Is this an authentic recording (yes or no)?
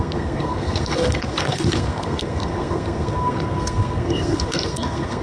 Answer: no